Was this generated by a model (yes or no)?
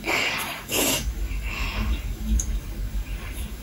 yes